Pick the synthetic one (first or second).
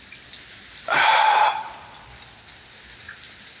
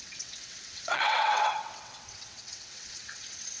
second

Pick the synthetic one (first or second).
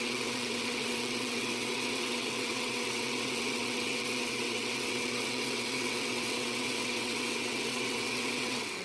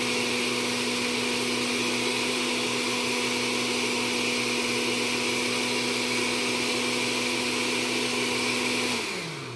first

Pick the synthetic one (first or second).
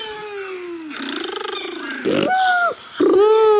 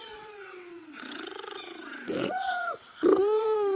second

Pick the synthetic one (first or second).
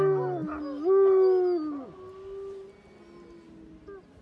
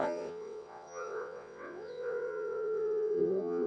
second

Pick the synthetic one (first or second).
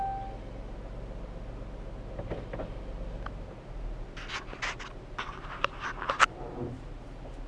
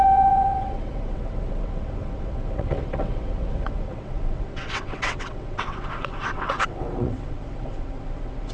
second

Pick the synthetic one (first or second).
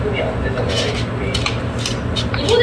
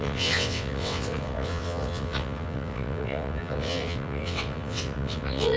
second